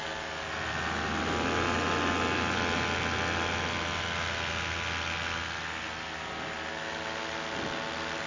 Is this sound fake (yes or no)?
no